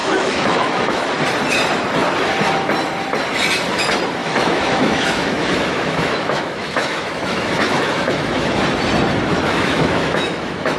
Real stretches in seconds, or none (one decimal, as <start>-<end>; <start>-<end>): 1.1-4.2; 8.6-9.3